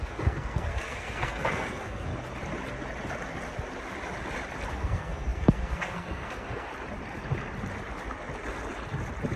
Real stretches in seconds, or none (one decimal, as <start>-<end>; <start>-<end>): 2.1-4.7; 6.7-9.4